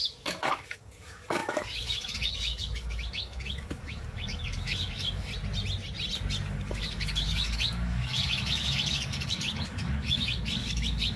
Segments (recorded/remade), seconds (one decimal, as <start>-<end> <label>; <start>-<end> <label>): 0.0-5.3 remade; 5.3-6.5 recorded; 6.5-11.2 remade